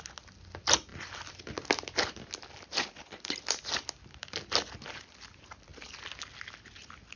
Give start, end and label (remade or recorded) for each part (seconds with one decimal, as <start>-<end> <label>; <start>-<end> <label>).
0.0-7.2 recorded